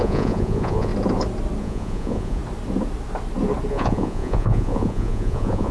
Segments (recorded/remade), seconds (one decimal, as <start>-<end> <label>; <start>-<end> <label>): 0.0-0.9 remade; 0.9-1.6 recorded; 1.6-2.4 remade; 2.4-3.7 recorded; 3.7-5.7 remade